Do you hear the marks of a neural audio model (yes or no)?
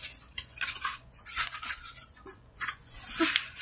yes